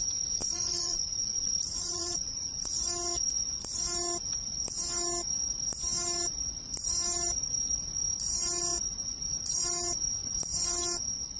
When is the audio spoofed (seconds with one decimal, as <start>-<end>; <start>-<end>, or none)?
0.4-2.7